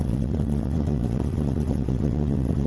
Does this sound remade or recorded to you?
remade